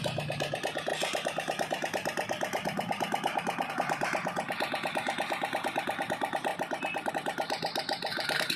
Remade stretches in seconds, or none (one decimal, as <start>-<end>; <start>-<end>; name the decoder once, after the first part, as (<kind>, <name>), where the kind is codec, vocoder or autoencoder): 6.5-7.1 (vocoder, BigVGAN v2)